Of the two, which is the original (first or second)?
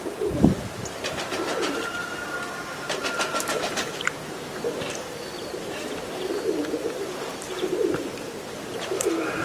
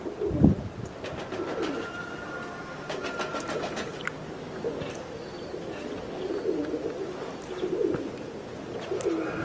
second